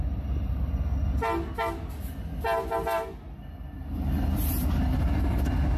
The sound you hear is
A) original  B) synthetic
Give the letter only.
A